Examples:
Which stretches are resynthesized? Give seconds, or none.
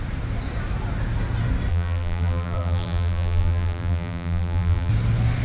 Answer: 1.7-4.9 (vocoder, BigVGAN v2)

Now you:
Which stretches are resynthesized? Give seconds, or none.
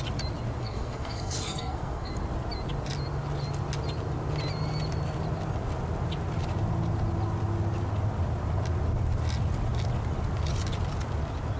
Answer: 0.6-2.1 (codec, SNAC)